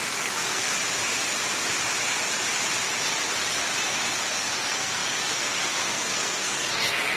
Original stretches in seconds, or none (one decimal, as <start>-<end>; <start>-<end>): 0.7-4.3